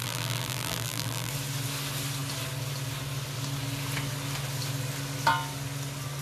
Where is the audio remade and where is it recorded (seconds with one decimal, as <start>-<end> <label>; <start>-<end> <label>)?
0.0-1.3 remade; 1.3-6.2 recorded